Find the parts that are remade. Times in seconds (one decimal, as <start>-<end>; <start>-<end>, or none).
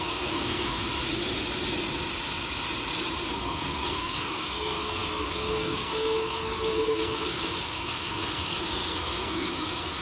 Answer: 0.0-0.8; 3.3-10.0